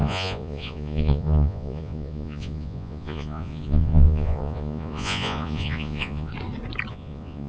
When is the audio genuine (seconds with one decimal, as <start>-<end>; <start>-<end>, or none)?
6.3-6.9